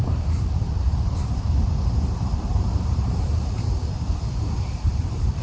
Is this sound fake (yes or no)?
yes